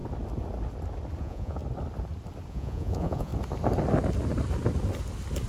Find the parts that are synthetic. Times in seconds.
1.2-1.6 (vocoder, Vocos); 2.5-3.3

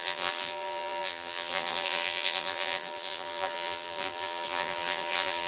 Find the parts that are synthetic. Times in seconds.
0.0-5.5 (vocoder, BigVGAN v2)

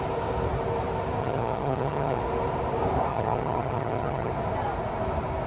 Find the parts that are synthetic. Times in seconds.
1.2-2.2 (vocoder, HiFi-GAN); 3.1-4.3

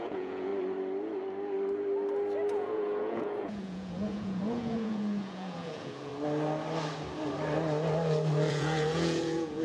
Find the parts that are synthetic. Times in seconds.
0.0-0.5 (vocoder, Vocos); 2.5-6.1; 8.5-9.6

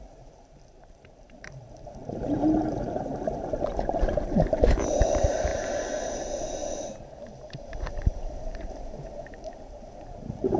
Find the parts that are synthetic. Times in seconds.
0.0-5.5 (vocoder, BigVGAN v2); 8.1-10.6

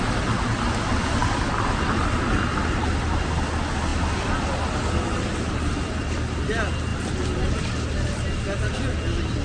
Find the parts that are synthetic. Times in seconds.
none

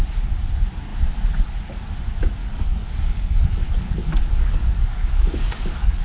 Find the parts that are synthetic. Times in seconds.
2.4-6.0 (codec, DAC)

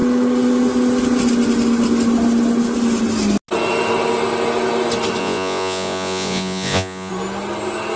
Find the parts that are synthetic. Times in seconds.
5.2-7.1 (vocoder, Vocos)